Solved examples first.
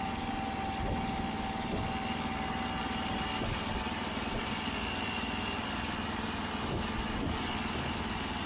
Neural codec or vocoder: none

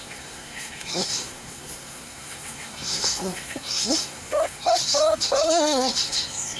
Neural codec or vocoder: codec, SNAC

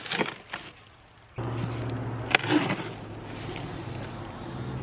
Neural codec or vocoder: none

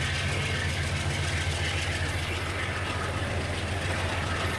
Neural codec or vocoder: none